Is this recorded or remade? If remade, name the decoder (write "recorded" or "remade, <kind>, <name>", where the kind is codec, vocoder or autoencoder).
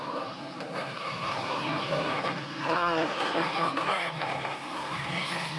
remade, codec, SNAC